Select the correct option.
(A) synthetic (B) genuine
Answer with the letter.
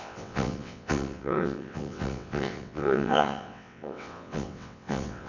A